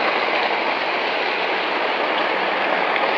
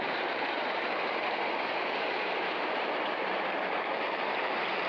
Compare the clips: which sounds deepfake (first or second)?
second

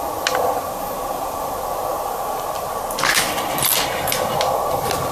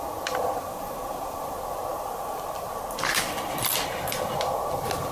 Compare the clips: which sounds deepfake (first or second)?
second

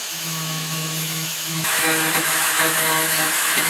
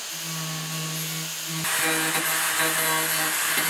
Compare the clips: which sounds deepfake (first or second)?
first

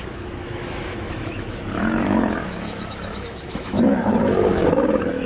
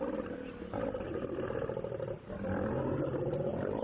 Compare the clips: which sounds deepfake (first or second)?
first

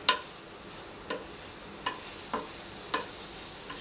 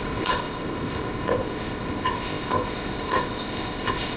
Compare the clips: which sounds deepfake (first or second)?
second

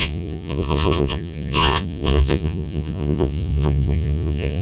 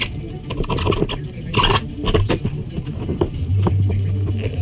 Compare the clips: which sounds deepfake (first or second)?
first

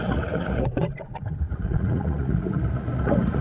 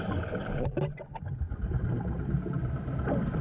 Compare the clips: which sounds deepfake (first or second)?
first